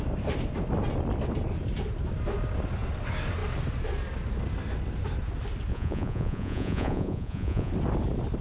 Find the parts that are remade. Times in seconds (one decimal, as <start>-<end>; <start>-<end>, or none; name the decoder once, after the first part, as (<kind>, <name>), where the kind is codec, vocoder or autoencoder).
5.7-7.7 (vocoder, Vocos)